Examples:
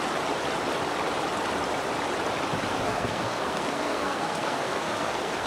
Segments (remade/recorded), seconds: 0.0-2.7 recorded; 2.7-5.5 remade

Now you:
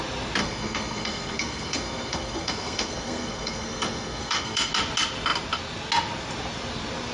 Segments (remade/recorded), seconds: 0.0-0.4 recorded; 0.4-4.7 remade; 4.7-7.1 recorded

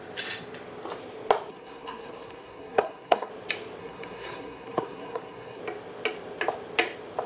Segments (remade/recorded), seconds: 0.0-1.5 recorded; 1.5-3.3 remade; 3.3-3.8 recorded; 3.8-5.6 remade; 5.6-7.3 recorded

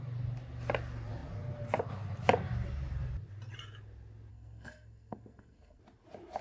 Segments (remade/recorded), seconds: 0.0-4.3 recorded; 4.3-5.8 remade; 5.8-6.4 recorded